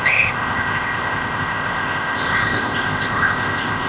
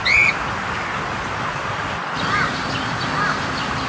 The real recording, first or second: second